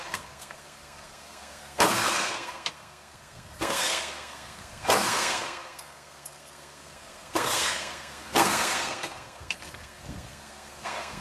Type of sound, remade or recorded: remade